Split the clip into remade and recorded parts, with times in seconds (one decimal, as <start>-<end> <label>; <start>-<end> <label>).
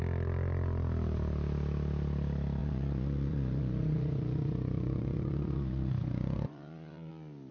0.0-2.6 recorded; 2.6-7.1 remade; 7.1-7.5 recorded